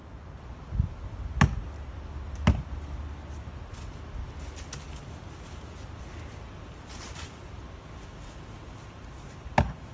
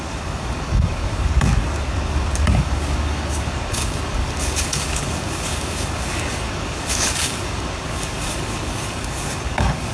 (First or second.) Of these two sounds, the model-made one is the second